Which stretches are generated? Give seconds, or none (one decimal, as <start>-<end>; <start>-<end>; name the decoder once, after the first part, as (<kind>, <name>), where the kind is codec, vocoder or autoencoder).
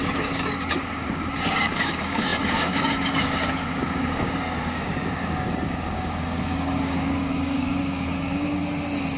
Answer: 0.0-8.6 (codec, DAC)